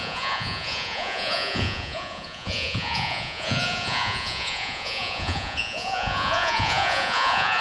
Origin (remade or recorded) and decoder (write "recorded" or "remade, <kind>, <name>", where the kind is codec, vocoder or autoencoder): remade, vocoder, Vocos